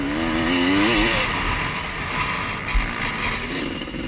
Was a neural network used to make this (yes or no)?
no